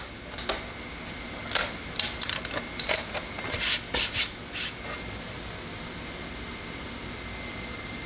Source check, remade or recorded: recorded